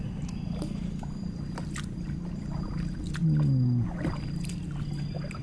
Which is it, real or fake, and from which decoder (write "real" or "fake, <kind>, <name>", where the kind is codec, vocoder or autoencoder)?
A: real